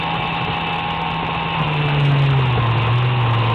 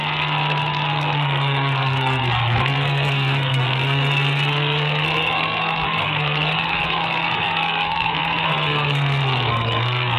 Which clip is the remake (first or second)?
second